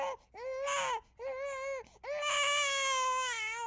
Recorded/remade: recorded